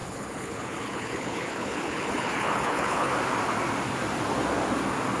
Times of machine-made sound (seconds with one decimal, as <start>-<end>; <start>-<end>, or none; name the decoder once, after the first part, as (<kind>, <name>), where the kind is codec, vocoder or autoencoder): 0.0-3.1 (codec, HILCodec)